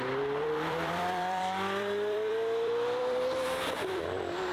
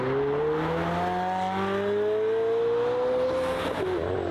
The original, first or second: second